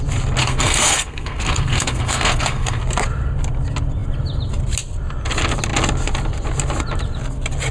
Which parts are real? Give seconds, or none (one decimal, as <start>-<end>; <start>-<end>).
0.0-0.4; 2.8-7.7